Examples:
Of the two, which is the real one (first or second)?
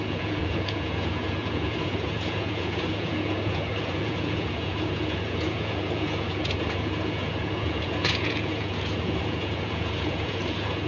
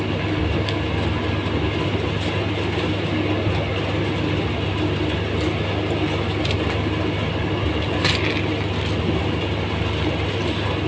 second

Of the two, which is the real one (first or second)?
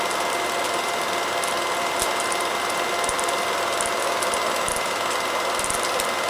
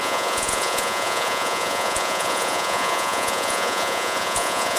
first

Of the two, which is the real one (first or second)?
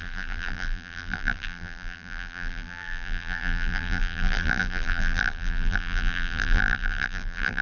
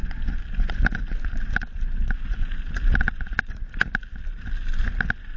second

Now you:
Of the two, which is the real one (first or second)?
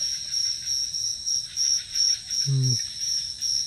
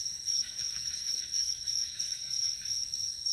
first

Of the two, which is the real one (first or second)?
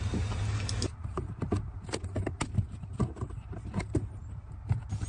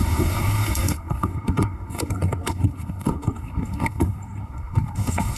first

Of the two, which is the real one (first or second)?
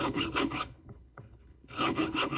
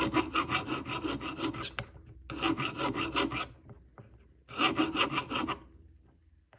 second